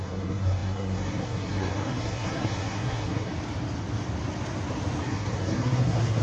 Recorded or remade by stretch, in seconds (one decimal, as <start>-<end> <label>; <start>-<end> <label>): 0.0-3.3 remade; 3.3-5.0 recorded; 5.0-6.2 remade